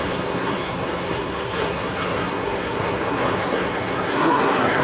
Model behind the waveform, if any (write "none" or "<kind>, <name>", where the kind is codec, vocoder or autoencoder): codec, SNAC